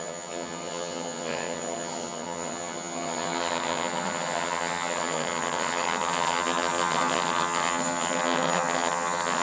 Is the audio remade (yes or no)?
yes